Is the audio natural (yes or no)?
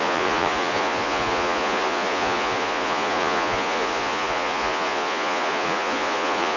no